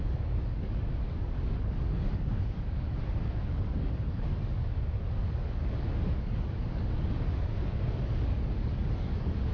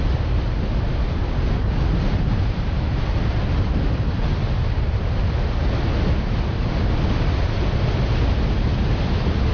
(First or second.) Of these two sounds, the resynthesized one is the first